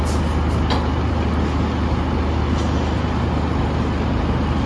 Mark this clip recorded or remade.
recorded